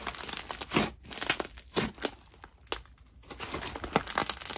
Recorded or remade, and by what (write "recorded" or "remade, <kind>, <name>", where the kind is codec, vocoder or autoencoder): recorded